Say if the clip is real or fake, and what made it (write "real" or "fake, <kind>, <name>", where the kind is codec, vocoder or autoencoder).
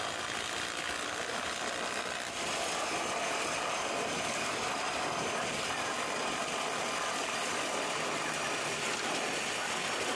real